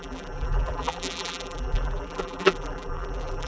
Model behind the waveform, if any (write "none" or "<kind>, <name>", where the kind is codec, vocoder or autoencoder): vocoder, BigVGAN v2